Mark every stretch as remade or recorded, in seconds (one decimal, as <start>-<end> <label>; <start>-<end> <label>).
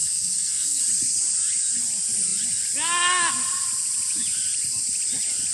0.0-0.8 remade; 0.8-5.5 recorded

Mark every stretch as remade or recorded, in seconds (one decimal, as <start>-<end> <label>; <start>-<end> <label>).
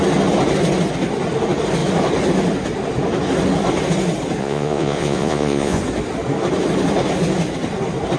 0.0-4.4 recorded; 4.4-5.8 remade; 5.8-8.2 recorded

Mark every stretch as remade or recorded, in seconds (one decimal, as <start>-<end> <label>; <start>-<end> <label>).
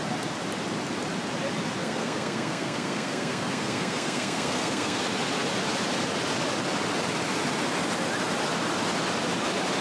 0.0-1.8 recorded; 1.8-5.0 remade; 5.0-9.8 recorded